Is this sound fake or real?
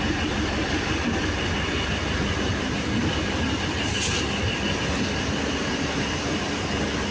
real